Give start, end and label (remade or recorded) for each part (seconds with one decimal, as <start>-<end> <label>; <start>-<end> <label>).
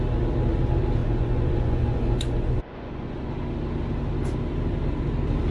0.0-1.0 recorded; 1.0-3.3 remade; 3.3-5.5 recorded